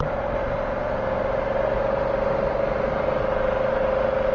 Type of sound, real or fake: real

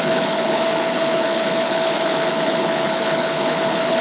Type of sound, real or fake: fake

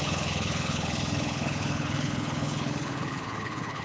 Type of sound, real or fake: fake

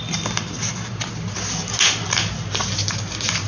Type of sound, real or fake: real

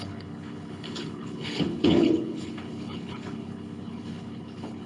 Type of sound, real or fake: fake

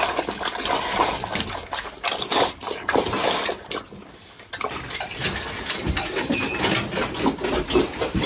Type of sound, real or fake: real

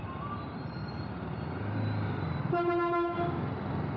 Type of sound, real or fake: real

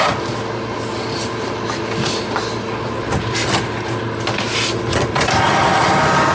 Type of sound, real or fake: real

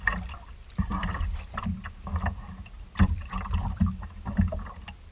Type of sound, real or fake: real